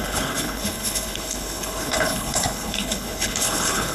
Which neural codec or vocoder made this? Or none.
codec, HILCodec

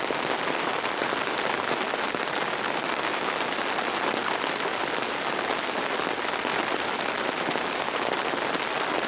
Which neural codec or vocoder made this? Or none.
none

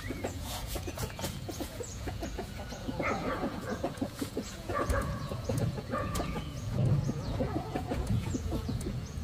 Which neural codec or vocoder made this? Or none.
vocoder, Vocos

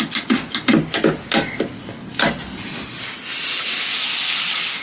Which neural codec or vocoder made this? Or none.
none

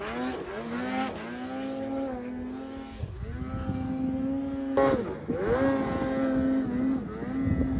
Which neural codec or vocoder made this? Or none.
none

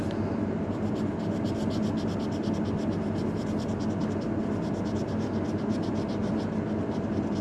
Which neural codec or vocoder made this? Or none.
none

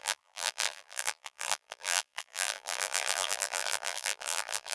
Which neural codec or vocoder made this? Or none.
vocoder, BigVGAN v2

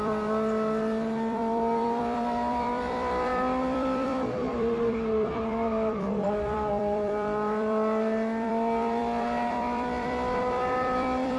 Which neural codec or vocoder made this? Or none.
vocoder, BigVGAN v2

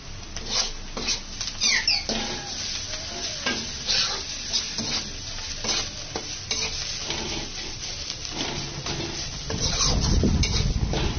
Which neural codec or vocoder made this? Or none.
none